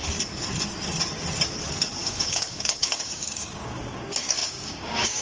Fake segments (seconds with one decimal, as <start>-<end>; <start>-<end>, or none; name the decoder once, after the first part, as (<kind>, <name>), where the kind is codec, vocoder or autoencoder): 2.0-5.2 (codec, DAC)